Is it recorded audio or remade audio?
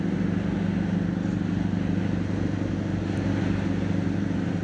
recorded